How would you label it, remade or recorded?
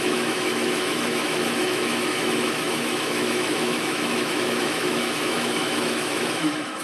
remade